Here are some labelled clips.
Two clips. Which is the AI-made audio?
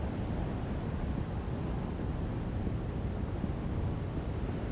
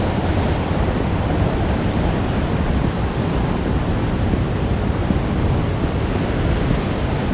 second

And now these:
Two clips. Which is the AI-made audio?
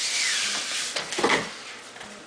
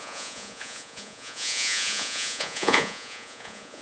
second